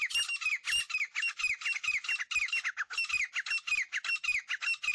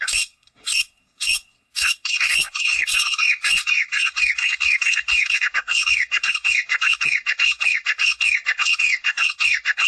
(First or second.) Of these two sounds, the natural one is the first